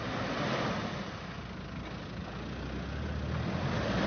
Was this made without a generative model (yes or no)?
yes